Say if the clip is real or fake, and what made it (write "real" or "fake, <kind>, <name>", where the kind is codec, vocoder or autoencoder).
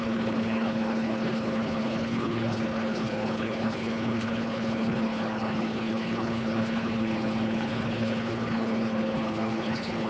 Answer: fake, codec, HILCodec